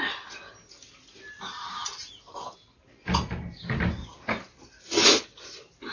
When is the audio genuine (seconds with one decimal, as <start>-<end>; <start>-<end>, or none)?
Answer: 0.0-5.9